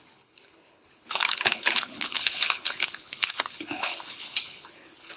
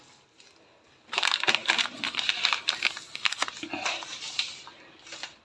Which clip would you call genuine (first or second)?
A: second